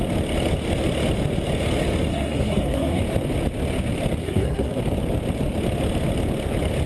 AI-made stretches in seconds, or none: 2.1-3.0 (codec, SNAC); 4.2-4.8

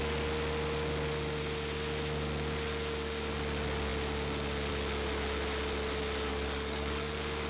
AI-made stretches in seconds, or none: 6.3-7.1 (codec, DAC)

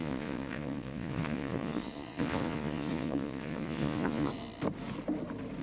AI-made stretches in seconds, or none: 0.0-4.3 (vocoder, Vocos)

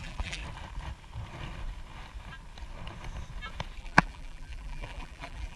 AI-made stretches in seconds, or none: 0.0-0.4 (vocoder, BigVGAN v2); 3.8-5.6

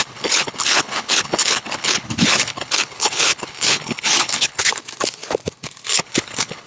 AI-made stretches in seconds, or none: 0.0-4.7 (codec, HILCodec); 5.9-6.7

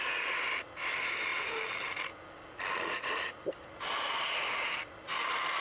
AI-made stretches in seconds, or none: none

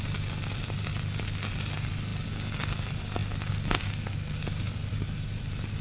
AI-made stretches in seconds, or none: none